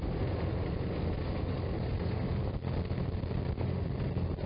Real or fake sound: real